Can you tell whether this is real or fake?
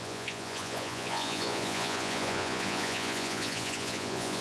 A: fake